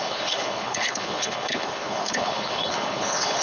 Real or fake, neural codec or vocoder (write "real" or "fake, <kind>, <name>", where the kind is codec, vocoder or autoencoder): fake, codec, HILCodec